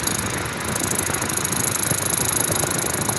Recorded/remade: recorded